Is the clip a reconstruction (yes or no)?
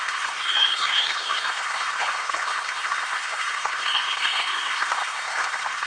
yes